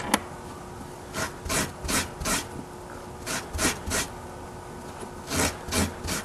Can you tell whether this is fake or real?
real